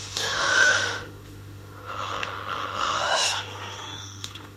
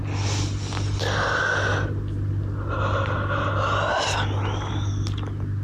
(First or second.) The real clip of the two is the second